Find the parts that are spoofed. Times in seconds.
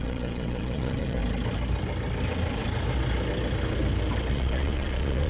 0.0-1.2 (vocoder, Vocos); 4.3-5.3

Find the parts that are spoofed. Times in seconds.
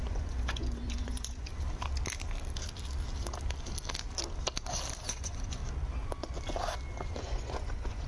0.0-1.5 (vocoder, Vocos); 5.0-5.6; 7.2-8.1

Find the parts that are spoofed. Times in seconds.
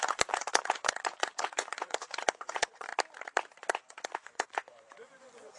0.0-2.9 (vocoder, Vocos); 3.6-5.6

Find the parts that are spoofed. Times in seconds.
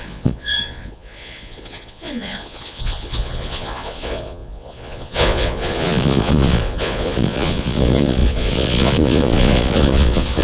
0.0-10.4 (vocoder, Vocos)